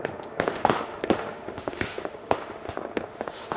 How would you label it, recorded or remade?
remade